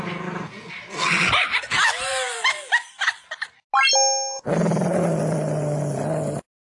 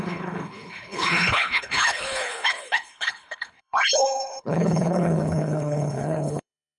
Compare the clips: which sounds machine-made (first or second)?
second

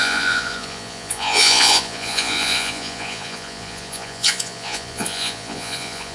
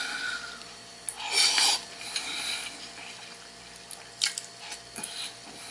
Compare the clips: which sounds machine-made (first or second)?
first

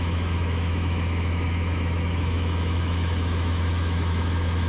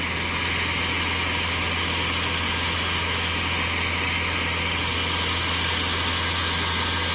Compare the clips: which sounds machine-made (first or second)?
first